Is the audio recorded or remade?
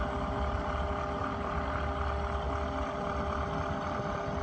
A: recorded